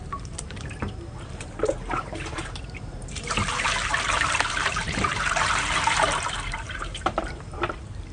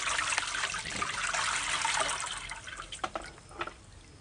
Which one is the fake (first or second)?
first